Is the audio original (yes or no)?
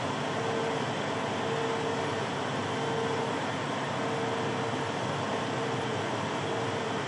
yes